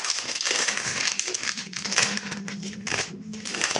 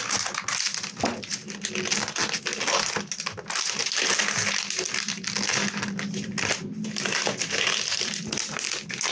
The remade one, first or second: first